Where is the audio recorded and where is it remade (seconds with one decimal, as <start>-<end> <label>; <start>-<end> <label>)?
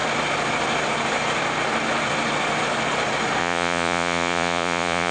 0.0-3.4 recorded; 3.4-5.1 remade